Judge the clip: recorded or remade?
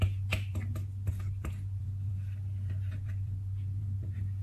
recorded